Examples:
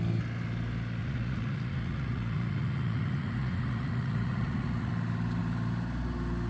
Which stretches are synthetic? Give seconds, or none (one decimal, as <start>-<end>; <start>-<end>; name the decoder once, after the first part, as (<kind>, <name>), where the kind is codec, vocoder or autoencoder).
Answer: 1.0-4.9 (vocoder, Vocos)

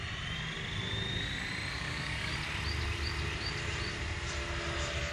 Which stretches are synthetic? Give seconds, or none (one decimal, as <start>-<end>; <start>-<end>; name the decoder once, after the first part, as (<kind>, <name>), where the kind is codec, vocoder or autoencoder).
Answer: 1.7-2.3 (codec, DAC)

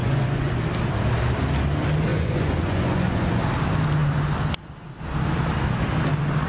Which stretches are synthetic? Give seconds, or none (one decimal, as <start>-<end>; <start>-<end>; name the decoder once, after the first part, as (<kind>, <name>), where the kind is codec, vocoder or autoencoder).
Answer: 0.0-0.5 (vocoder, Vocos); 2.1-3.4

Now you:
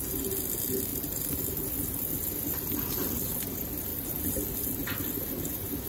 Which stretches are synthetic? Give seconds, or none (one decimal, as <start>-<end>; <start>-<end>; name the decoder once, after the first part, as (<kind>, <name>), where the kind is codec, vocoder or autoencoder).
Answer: none

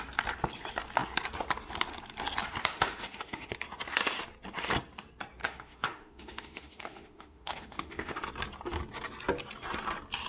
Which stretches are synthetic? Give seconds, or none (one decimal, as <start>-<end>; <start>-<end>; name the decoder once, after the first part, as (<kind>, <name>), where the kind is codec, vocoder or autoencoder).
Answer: 2.6-3.5 (autoencoder, DAC-VAE); 5.4-8.3